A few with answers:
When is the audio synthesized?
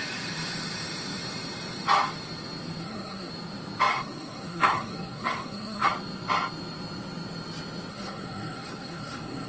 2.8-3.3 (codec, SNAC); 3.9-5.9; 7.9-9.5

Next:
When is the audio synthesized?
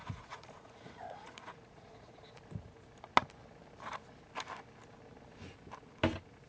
0.0-2.3 (vocoder, Vocos)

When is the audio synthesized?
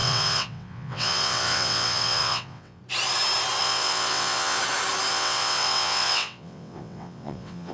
0.0-2.8 (vocoder, WaveNeXt); 3.6-4.6; 5.1-7.7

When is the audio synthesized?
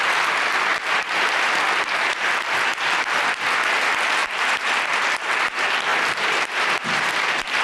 0.7-1.4 (vocoder, BigVGAN v2); 2.7-3.2; 4.2-4.8; 5.9-7.1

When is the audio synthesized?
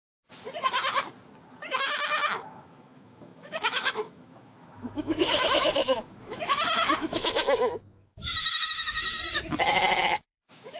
1.5-9.2 (autoencoder, DAC-VAE); 10.0-10.8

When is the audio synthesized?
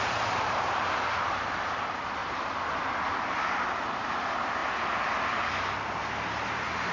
none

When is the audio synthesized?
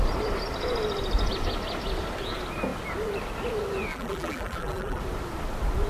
3.9-5.0 (vocoder, BigVGAN v2)